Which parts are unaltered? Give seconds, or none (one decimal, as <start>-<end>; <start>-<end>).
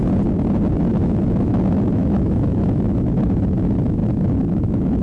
0.0-0.9